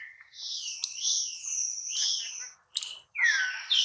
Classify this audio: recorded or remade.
recorded